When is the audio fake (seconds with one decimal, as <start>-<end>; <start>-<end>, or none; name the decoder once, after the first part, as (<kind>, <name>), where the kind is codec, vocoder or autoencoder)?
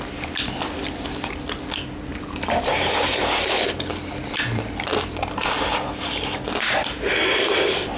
2.1-2.9 (vocoder, BigVGAN v2)